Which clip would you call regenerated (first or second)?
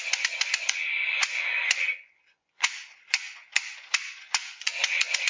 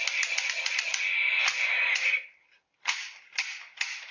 first